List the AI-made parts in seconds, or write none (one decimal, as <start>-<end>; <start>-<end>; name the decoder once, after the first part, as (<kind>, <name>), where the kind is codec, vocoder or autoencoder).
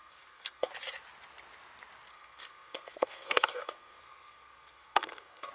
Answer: 0.0-0.7 (codec, SNAC); 2.1-5.5